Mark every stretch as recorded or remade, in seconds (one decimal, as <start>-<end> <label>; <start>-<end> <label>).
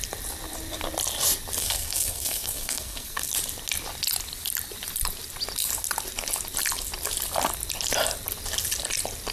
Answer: 0.0-1.6 recorded; 1.6-3.3 remade; 3.3-9.3 recorded